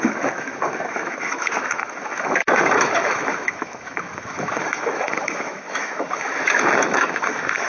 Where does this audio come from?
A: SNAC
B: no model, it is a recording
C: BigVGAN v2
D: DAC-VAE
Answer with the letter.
D